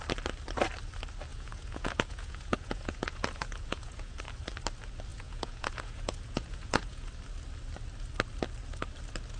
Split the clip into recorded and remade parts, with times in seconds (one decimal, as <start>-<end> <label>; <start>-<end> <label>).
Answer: 0.0-1.3 recorded; 1.3-4.2 remade; 4.2-5.1 recorded; 5.1-7.1 remade; 7.1-9.4 recorded